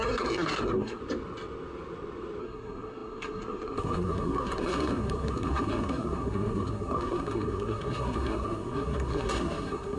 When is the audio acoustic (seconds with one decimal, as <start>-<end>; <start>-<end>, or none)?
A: 1.0-2.4

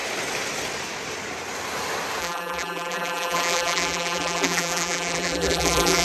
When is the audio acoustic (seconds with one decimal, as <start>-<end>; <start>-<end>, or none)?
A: 0.0-2.2

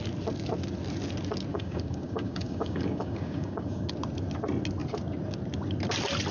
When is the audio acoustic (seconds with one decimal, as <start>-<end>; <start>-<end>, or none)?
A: 0.0-1.5; 3.9-6.3

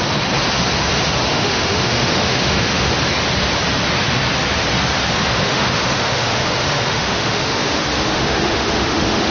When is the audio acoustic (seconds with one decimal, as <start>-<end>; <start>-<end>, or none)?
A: 0.0-1.3; 2.9-5.3